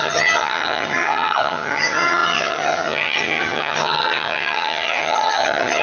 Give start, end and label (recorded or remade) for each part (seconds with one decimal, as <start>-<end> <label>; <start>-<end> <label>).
0.0-5.8 remade